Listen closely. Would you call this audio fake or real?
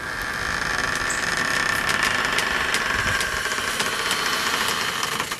real